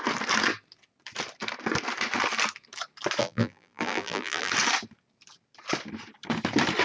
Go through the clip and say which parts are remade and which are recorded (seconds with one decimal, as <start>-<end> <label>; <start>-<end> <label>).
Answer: 0.0-3.2 recorded; 3.2-4.5 remade; 4.5-6.8 recorded